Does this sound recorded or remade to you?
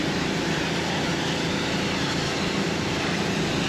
recorded